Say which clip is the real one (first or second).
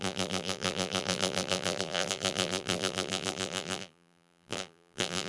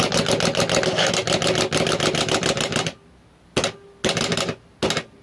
second